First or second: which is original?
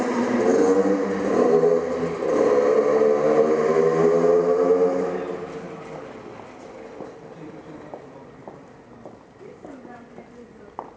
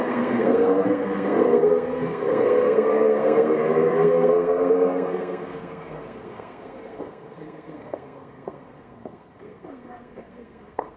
first